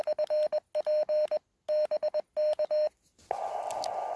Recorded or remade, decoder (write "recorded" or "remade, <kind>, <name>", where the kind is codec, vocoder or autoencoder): recorded